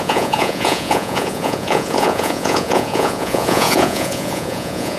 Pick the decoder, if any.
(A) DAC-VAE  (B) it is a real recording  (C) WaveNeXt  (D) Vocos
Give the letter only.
D